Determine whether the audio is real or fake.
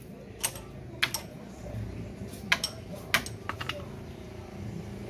real